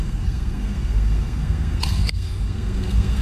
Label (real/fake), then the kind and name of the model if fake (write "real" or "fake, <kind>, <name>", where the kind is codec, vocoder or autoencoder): fake, codec, SNAC